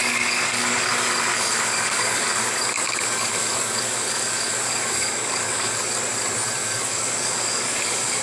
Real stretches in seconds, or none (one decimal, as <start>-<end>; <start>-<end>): 0.9-1.3; 6.0-6.6